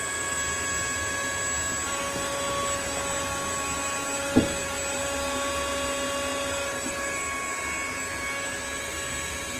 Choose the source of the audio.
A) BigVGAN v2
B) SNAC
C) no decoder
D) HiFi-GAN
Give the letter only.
C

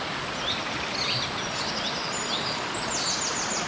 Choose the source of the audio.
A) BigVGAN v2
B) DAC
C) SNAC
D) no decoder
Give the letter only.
D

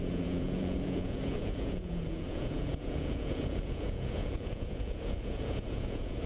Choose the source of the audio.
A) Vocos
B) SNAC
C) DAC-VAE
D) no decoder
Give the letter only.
A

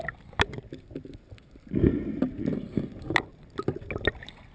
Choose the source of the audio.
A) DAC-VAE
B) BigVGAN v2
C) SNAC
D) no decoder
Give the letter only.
D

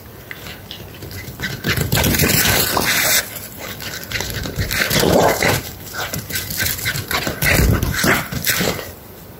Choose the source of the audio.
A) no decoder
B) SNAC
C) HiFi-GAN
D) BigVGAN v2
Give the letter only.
D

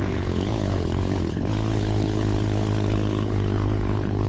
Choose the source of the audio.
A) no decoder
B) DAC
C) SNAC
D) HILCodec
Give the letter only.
D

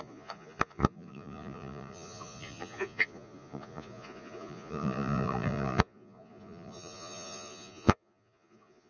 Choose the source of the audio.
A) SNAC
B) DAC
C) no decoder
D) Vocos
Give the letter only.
D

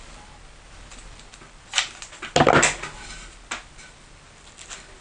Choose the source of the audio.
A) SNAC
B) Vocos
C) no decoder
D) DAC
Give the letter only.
C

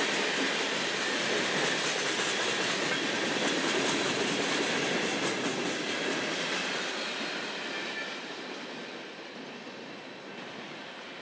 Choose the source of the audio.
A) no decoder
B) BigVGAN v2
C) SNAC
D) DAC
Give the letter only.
A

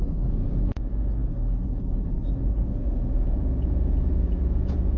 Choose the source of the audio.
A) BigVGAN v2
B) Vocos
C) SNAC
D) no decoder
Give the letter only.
B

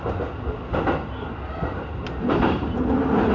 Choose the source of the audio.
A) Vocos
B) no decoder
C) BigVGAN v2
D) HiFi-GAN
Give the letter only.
B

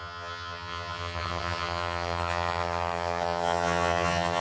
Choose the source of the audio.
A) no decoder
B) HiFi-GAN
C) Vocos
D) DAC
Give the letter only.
B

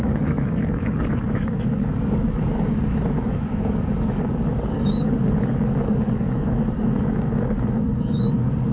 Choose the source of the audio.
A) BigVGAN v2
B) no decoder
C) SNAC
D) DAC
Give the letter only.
D